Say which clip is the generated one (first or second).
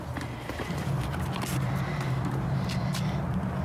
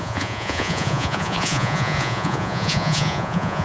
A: second